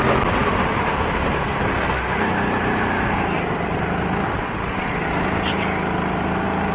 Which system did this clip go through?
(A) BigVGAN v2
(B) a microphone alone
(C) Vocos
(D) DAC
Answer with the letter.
B